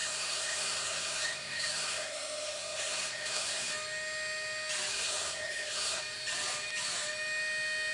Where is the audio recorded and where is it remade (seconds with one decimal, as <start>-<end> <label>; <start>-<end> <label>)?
0.0-3.7 remade; 3.7-4.9 recorded; 4.9-6.0 remade; 6.0-7.9 recorded